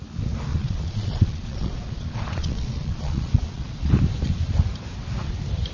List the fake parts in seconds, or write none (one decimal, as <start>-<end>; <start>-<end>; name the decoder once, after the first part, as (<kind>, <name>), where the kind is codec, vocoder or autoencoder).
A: 0.5-3.9 (vocoder, Vocos)